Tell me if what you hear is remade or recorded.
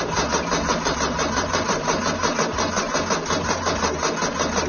recorded